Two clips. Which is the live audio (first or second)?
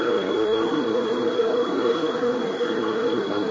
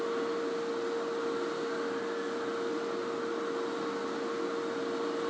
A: second